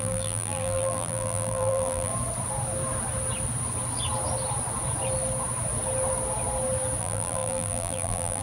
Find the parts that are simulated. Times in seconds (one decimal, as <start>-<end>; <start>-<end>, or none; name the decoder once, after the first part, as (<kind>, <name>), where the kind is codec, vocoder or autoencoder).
0.0-2.1 (vocoder, BigVGAN v2); 7.0-8.4